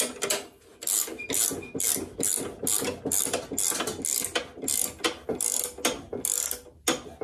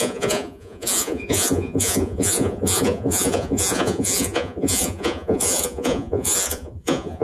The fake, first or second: second